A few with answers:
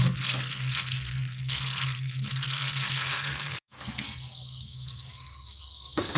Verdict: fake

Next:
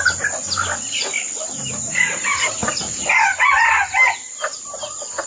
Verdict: real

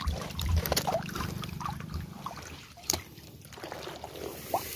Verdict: fake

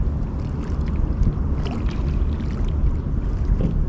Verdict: real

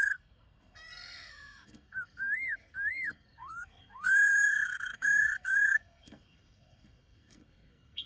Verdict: fake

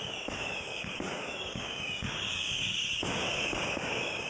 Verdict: fake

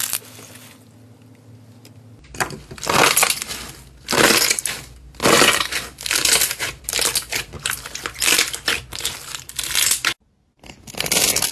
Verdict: real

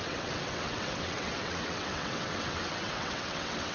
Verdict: fake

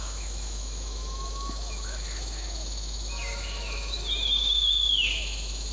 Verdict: fake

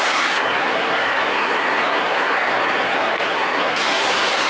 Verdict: fake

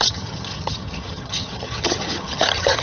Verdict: fake